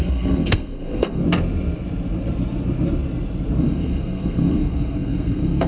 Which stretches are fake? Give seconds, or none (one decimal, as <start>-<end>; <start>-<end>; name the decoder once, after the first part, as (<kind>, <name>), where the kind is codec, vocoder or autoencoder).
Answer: 0.0-1.2 (codec, SNAC); 3.6-5.7